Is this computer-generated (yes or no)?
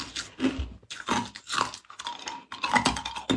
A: no